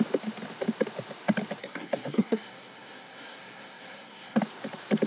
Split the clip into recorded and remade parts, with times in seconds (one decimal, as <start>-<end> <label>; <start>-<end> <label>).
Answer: 0.0-1.6 recorded; 1.6-4.4 remade; 4.4-5.1 recorded